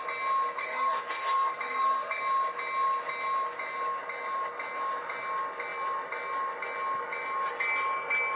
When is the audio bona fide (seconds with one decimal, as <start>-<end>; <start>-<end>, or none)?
0.0-0.6; 2.2-8.4